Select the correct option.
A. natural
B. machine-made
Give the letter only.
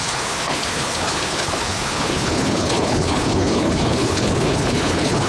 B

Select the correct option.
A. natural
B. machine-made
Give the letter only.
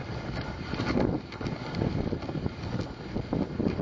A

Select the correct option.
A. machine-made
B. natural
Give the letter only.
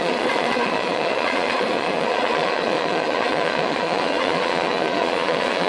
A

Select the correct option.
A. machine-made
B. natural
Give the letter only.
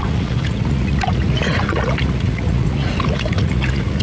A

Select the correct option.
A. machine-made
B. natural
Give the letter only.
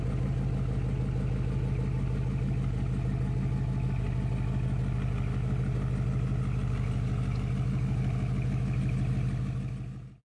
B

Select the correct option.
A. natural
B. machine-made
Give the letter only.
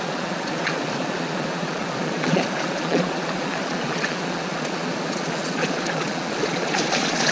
B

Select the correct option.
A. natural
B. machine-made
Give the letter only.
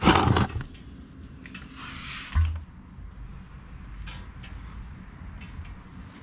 A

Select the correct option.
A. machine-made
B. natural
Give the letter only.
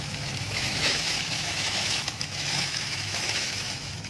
A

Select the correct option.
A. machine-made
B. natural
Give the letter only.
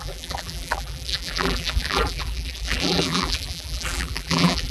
A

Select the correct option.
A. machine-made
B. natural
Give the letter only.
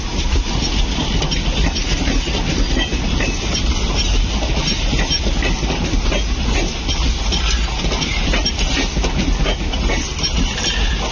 B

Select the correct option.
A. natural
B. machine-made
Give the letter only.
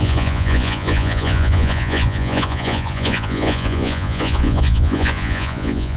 B